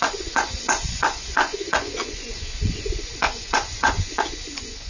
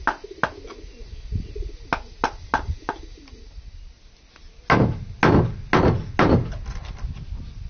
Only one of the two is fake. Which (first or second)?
first